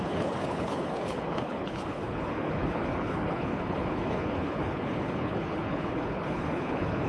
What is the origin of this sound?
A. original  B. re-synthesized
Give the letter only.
B